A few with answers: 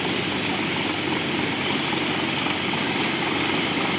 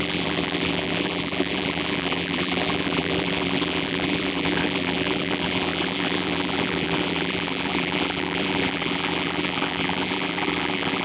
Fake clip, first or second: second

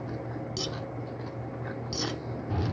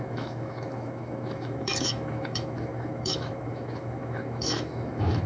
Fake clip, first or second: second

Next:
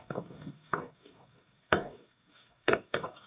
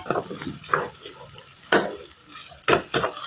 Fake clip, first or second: first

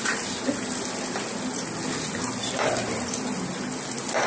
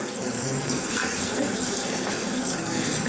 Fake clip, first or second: second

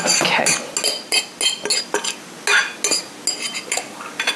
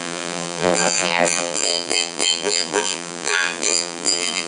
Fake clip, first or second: second